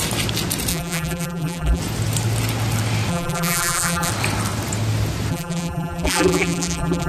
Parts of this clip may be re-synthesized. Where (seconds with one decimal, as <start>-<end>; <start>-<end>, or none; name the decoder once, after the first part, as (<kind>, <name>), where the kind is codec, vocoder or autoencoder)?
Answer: 0.7-1.8 (vocoder, BigVGAN v2); 3.1-4.1; 5.3-7.1